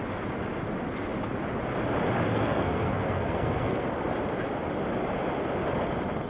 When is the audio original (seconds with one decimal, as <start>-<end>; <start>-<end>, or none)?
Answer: 0.0-2.3; 3.9-6.3